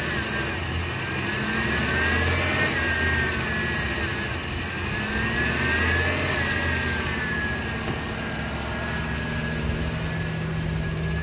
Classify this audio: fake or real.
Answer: real